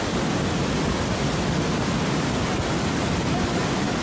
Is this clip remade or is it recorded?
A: recorded